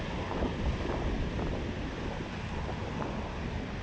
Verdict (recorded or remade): recorded